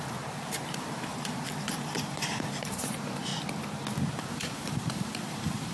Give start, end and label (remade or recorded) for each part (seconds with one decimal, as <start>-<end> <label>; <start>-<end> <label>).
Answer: 0.0-3.3 remade; 3.3-4.2 recorded; 4.2-5.7 remade